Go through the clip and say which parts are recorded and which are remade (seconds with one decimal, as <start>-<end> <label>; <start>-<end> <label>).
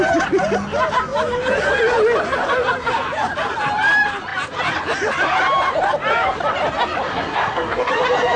0.0-7.1 recorded; 7.1-7.9 remade; 7.9-8.4 recorded